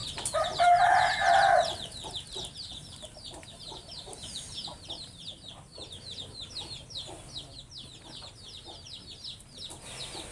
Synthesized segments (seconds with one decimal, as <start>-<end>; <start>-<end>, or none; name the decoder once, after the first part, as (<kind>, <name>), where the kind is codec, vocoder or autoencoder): 0.0-5.2 (vocoder, BigVGAN v2)

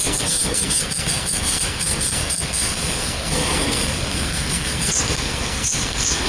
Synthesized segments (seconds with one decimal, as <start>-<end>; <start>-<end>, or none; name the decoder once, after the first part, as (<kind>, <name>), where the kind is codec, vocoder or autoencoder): 0.0-6.3 (codec, SNAC)

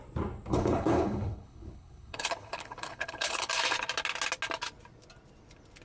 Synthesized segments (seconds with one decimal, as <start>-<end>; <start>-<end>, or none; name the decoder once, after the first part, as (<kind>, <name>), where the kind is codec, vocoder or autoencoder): 0.5-3.5 (codec, HILCodec)